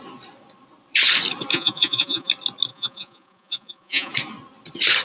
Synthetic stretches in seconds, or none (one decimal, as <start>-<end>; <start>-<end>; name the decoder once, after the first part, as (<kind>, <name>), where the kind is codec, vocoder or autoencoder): 1.5-2.3 (vocoder, Vocos); 2.7-4.1